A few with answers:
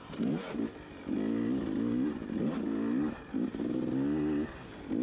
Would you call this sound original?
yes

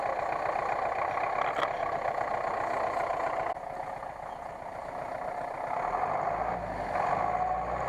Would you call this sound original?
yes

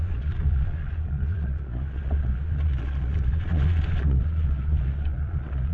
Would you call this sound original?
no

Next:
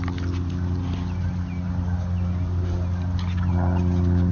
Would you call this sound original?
yes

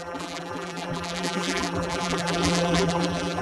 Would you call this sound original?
no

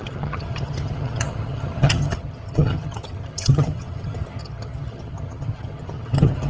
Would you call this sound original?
no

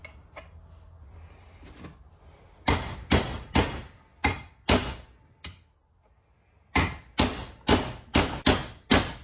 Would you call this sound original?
yes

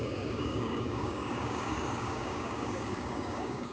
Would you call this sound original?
no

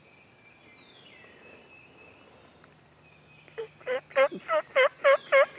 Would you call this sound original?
yes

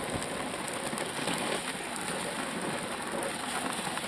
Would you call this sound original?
yes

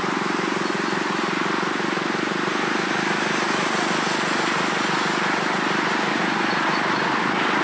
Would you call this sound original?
yes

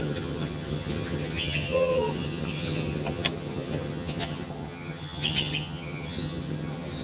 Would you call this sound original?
no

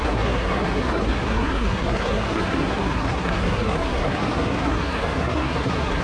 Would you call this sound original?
no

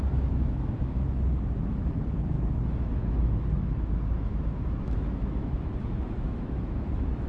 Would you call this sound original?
no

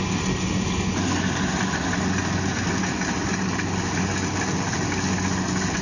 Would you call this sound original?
yes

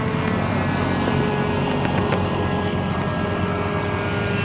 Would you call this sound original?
yes